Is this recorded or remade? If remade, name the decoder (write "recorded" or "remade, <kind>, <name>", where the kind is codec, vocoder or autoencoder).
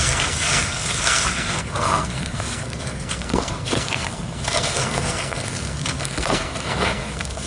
remade, codec, SNAC